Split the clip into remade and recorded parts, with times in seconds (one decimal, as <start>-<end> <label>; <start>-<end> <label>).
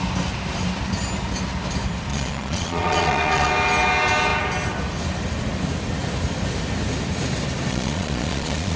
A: 0.0-2.1 recorded; 2.1-3.5 remade; 3.5-7.7 recorded; 7.7-8.8 remade